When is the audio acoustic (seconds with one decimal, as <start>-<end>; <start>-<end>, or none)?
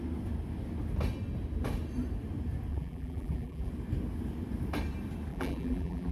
0.0-2.7; 3.7-5.3